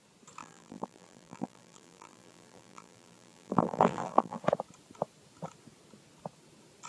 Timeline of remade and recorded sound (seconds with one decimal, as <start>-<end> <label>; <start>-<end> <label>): 0.0-0.4 recorded; 0.4-4.4 remade; 4.4-6.9 recorded